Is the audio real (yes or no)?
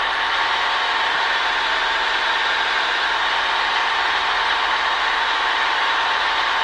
no